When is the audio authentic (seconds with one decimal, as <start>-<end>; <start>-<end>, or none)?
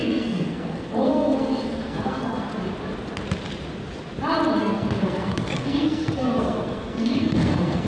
2.5-4.6